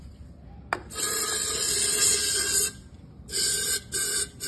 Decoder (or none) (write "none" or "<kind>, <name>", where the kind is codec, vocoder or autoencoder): none